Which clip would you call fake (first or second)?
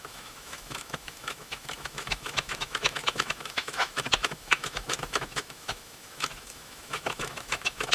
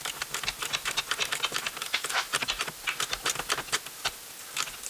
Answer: first